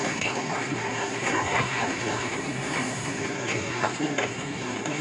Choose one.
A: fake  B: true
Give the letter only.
A